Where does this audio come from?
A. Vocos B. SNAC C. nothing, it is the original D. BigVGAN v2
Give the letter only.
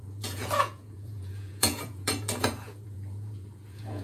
A